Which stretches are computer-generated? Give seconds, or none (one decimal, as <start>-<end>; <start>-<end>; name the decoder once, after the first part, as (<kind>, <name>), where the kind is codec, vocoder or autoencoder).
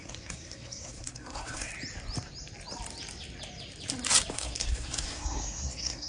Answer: 0.0-1.7 (codec, SNAC); 4.3-6.1